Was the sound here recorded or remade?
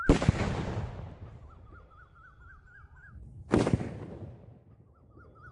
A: recorded